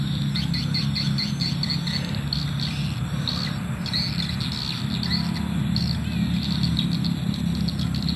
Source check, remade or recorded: recorded